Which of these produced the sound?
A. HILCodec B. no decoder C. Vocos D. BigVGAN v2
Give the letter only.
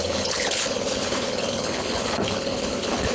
A